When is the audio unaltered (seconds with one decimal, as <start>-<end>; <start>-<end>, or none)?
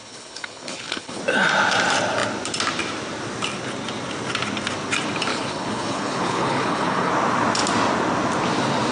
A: 1.2-5.3; 7.1-8.9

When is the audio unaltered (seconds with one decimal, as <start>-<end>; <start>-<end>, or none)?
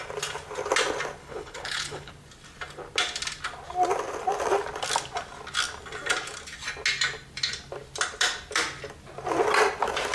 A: 0.0-1.2; 2.1-10.1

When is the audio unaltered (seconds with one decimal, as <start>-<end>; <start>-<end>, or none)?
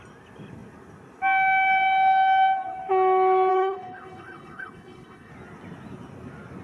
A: 0.0-3.5; 5.3-6.6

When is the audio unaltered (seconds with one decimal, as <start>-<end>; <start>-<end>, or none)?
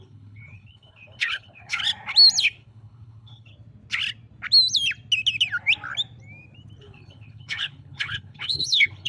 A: 1.8-2.4; 3.5-6.8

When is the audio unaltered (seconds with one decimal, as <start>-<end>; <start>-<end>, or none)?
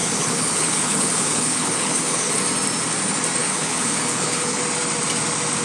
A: 2.3-3.4; 4.6-5.6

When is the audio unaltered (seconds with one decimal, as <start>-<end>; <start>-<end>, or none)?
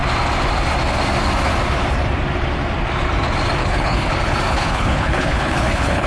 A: 0.0-3.6; 4.1-4.5